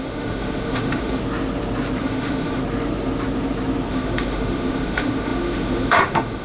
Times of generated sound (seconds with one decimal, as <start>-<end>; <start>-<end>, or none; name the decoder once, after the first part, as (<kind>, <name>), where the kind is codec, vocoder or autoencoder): 0.0-1.2 (autoencoder, DAC-VAE); 2.0-2.6; 3.9-6.4